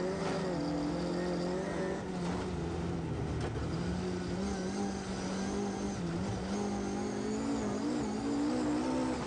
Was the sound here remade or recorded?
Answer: recorded